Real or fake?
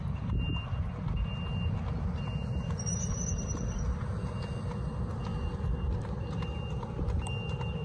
real